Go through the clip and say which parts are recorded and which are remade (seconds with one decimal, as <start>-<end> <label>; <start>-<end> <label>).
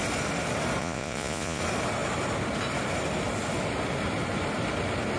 0.0-0.8 recorded; 0.8-1.6 remade; 1.6-5.2 recorded